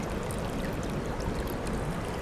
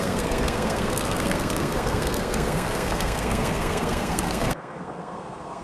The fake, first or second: second